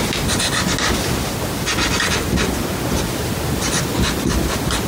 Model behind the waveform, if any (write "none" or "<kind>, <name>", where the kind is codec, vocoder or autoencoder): none